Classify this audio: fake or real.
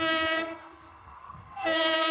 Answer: fake